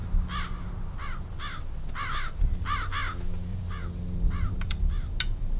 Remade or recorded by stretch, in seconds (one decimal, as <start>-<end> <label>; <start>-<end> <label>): 0.0-3.5 recorded; 3.5-4.8 remade; 4.8-5.6 recorded